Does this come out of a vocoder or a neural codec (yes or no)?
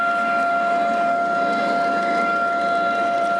no